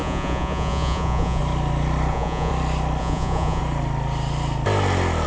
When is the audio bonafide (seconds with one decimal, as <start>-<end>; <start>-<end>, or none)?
1.4-2.1; 2.5-3.0; 3.6-5.3